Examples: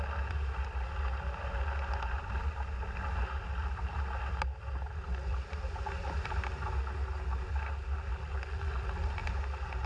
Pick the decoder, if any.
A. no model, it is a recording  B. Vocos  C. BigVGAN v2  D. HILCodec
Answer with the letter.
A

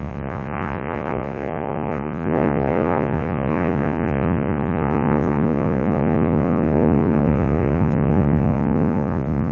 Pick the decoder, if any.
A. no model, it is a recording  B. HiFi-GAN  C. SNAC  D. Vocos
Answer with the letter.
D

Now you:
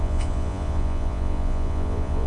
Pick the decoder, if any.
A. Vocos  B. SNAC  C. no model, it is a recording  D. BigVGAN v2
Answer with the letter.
A